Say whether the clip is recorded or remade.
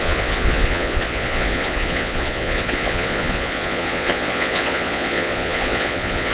remade